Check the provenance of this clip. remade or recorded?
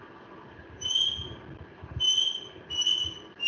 recorded